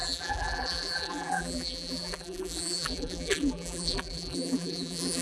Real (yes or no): no